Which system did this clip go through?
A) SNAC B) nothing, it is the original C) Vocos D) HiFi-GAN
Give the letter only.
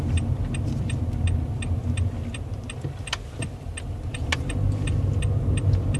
B